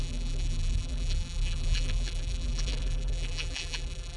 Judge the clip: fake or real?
fake